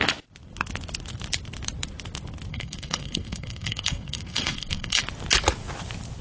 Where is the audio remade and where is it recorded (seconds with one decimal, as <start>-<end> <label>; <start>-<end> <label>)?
0.0-2.5 recorded; 2.5-5.0 remade; 5.0-6.2 recorded